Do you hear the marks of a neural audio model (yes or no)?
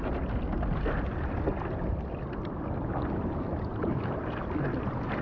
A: no